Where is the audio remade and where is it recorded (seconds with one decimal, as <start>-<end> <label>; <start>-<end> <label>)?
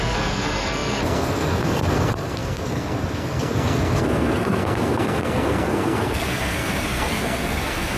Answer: 0.0-8.0 remade